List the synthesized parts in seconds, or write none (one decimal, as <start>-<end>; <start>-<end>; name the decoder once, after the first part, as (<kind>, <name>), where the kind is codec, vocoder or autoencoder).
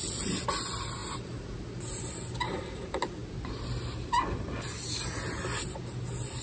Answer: none